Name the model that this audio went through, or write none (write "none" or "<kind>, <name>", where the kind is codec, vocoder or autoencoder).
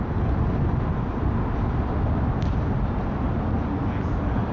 none